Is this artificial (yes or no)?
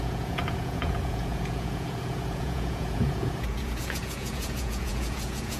yes